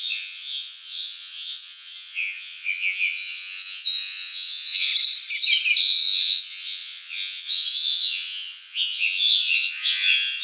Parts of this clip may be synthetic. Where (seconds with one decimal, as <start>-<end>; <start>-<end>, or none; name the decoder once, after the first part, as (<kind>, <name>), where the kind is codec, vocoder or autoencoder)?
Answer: 0.0-4.9 (vocoder, Vocos); 5.8-10.4